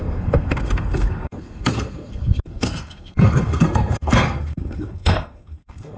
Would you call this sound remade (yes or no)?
yes